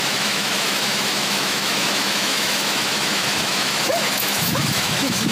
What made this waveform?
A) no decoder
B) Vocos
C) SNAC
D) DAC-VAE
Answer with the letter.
D